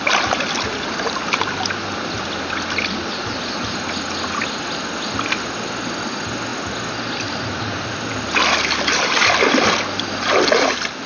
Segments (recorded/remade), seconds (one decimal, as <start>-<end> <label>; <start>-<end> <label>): 0.0-11.1 recorded